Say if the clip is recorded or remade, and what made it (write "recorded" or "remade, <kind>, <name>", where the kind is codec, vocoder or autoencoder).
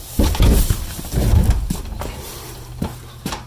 recorded